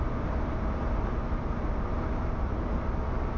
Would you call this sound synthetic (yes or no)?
no